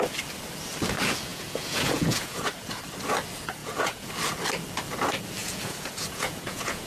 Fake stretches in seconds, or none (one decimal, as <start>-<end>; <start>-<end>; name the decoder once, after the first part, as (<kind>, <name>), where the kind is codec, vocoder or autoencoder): 1.3-2.8 (vocoder, Vocos); 3.6-4.1; 5.4-6.9